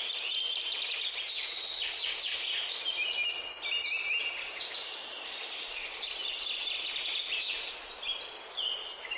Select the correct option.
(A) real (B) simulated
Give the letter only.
A